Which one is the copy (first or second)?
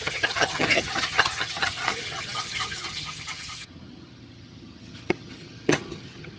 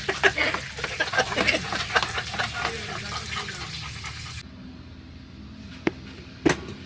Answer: first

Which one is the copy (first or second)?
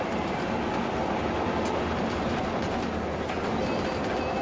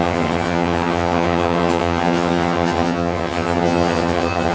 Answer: second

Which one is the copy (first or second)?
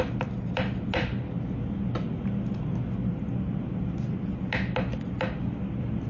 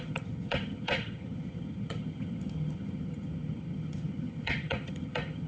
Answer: second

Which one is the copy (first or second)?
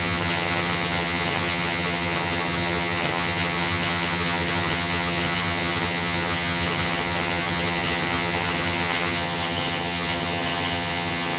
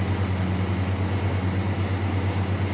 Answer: first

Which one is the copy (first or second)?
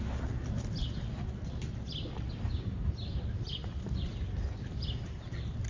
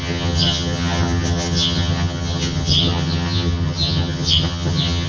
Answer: second